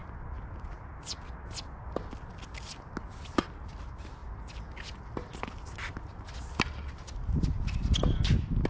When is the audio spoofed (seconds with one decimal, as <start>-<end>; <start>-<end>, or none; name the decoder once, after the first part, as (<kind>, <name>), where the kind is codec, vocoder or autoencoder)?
none